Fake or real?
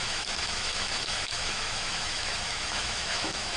fake